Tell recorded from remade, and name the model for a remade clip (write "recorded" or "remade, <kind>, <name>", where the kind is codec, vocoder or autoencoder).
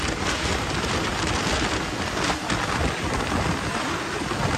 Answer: recorded